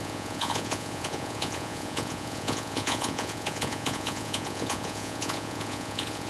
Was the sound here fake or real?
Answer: fake